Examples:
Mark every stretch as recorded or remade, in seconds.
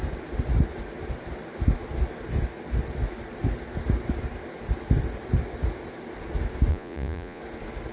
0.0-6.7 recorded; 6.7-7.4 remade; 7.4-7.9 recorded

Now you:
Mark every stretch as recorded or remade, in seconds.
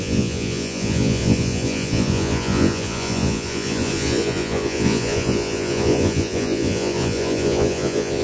0.0-8.2 remade